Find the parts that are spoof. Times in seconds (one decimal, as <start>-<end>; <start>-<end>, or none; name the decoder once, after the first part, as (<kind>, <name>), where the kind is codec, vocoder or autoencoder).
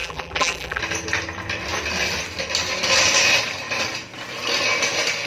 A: 0.0-0.8 (vocoder, BigVGAN v2)